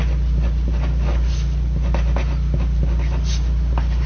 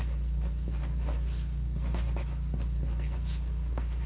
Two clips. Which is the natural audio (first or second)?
first